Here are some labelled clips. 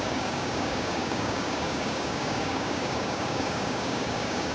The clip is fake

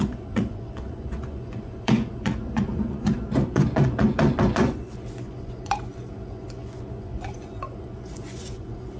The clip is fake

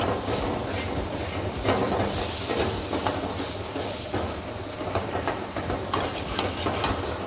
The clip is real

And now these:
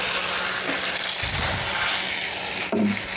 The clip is real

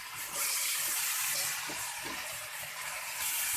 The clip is fake